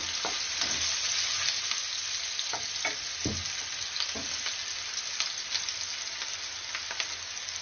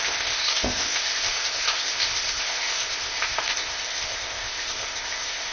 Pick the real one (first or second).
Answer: first